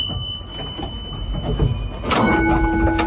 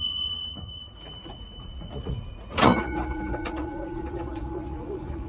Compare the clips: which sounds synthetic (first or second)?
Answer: second